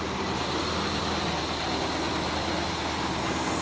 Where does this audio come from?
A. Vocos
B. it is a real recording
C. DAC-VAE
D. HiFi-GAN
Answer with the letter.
B